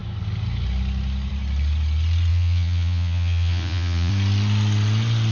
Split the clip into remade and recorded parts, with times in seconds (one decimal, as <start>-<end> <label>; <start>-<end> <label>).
0.0-2.3 recorded; 2.3-4.1 remade; 4.1-5.3 recorded

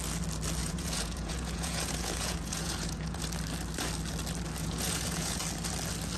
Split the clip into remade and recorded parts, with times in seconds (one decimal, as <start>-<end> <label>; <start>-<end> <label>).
0.0-0.6 recorded; 0.6-3.2 remade; 3.2-4.6 recorded; 4.6-5.4 remade; 5.4-6.2 recorded

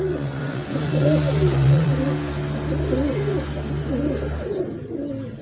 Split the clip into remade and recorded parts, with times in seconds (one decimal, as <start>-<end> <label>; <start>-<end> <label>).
0.0-1.9 remade; 1.9-5.4 recorded